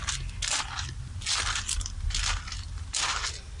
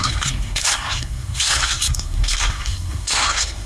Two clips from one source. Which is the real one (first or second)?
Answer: first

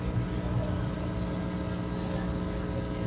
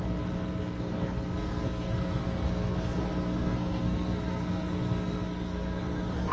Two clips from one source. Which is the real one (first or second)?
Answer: first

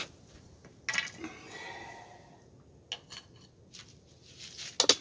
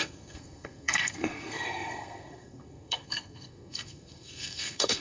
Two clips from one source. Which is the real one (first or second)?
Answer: first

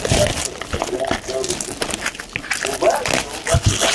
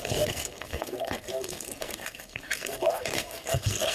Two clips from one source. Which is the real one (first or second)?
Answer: first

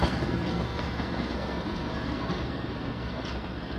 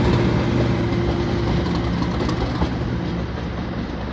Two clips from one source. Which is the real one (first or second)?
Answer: second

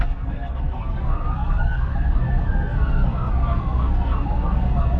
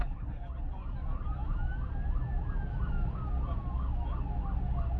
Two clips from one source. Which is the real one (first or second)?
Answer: second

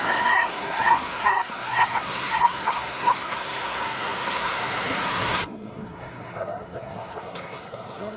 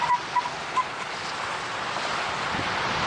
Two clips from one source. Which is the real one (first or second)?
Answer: second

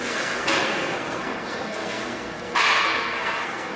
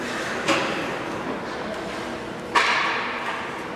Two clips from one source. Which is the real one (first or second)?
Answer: second